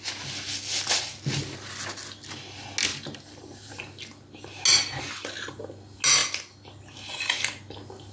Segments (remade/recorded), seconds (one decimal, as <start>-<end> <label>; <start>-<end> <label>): 0.0-2.9 recorded; 2.9-3.8 remade; 3.8-8.1 recorded